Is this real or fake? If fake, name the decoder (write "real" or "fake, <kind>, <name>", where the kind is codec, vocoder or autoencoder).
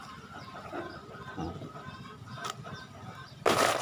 real